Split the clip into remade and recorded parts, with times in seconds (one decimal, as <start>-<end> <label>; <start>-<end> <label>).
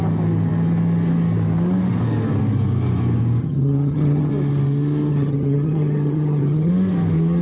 0.0-3.4 recorded; 3.4-4.3 remade; 4.3-5.1 recorded; 5.1-6.7 remade; 6.7-7.4 recorded